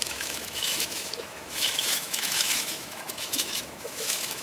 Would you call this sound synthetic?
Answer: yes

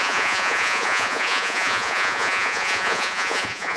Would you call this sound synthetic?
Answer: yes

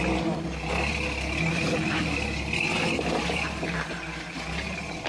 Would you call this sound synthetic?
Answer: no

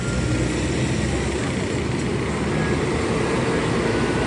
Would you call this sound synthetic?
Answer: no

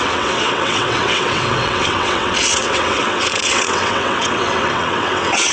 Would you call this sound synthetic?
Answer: yes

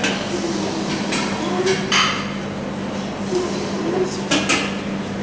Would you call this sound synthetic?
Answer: no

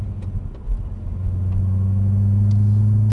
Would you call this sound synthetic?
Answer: no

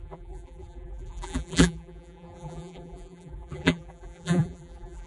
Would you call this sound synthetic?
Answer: yes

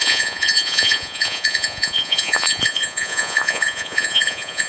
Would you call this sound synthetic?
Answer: yes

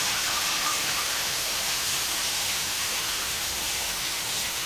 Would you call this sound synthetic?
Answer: yes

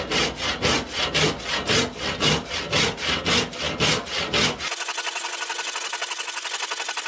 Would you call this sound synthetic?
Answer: no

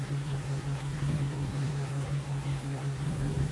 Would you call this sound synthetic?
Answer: yes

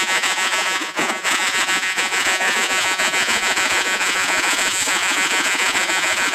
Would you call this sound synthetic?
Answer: yes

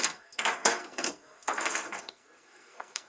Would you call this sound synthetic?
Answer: yes